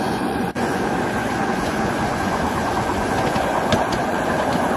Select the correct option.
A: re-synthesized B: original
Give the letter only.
A